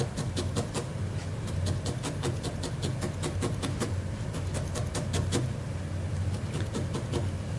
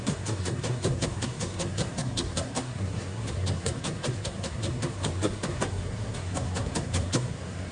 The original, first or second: first